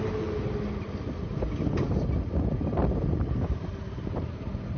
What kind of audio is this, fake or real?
real